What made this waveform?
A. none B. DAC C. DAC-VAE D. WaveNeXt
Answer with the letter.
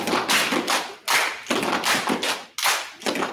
A